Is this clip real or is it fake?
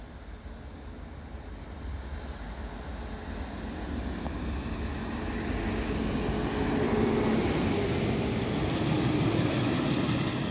real